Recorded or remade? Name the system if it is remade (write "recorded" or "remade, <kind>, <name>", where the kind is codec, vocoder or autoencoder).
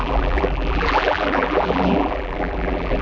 remade, vocoder, BigVGAN v2